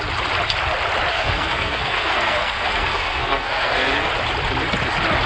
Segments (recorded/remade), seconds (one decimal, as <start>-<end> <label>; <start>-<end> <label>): 0.0-1.1 recorded; 1.1-4.1 remade; 4.1-5.3 recorded